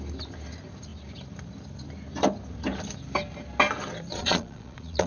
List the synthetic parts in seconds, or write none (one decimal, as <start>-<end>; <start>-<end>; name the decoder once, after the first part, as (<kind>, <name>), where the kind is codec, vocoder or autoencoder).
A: 4.1-5.1 (vocoder, Vocos)